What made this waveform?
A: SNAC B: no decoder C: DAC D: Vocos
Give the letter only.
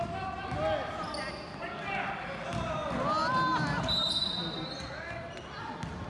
B